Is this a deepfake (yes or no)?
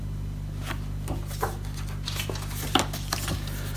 no